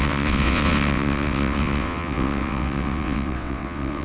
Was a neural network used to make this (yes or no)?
yes